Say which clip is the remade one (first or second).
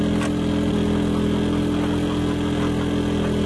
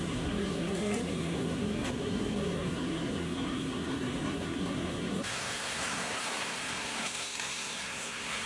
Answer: second